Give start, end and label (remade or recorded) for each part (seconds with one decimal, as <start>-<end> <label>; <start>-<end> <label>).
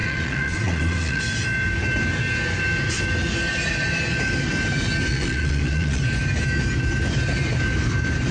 0.0-1.2 remade; 1.2-5.1 recorded; 5.1-6.0 remade; 6.0-8.3 recorded